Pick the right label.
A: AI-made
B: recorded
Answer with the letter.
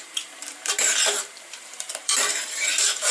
A